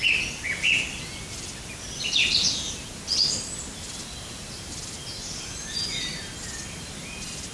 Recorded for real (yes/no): yes